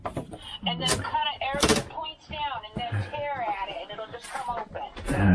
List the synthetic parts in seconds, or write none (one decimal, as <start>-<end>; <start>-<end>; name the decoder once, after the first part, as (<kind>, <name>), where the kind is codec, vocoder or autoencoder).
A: none